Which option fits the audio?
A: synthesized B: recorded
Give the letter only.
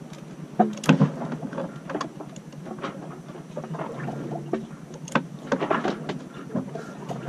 B